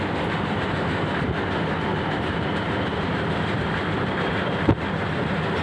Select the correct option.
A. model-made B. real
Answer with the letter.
B